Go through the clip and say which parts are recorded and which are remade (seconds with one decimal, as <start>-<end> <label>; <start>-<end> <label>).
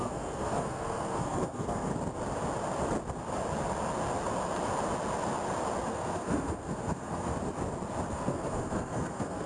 0.0-1.9 remade; 1.9-5.9 recorded; 5.9-7.3 remade; 7.3-8.1 recorded; 8.1-9.5 remade